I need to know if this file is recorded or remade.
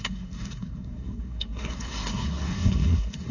remade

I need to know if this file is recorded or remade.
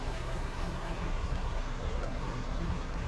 remade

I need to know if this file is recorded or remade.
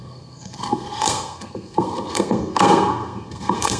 remade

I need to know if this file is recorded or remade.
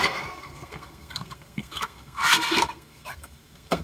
remade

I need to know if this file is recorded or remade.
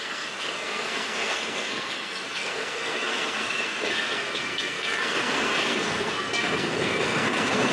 remade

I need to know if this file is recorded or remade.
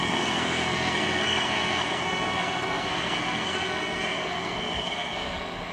remade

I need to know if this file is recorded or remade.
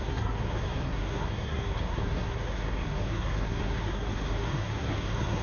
remade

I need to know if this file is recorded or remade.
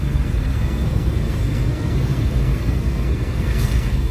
remade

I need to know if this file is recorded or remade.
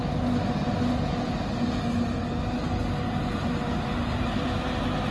recorded